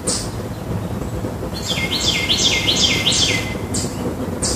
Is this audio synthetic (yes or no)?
no